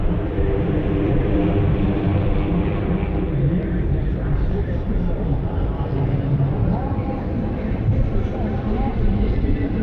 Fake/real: fake